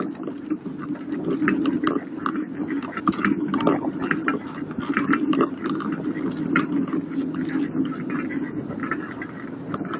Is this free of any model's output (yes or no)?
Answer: yes